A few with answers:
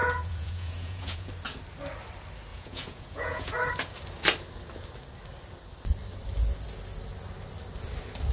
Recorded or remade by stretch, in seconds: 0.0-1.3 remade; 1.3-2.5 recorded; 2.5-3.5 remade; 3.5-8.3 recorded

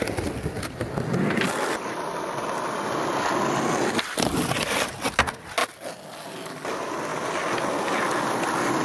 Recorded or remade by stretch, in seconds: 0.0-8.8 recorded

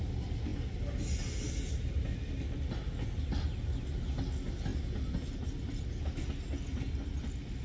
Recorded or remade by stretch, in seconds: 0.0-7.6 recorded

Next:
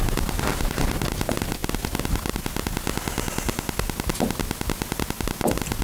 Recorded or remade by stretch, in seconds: 0.0-0.5 recorded; 0.5-1.2 remade; 1.2-5.8 recorded

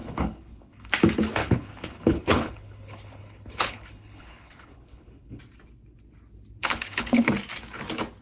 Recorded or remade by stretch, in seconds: 0.0-0.9 remade; 0.9-1.4 recorded; 1.4-5.4 remade; 5.4-6.6 recorded; 6.6-7.3 remade; 7.3-8.2 recorded

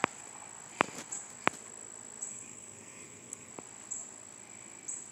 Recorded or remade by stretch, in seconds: 0.0-2.3 recorded; 2.3-3.5 remade; 3.5-5.1 recorded

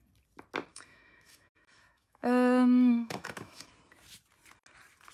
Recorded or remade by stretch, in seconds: 0.0-0.7 recorded; 0.7-3.7 remade; 3.7-5.1 recorded

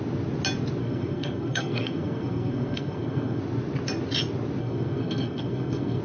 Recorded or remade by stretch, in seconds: 0.0-0.8 recorded; 0.8-3.4 remade; 3.4-4.6 recorded; 4.6-6.0 remade